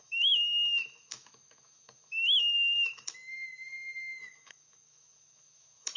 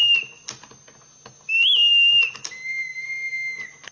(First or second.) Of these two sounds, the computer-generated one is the first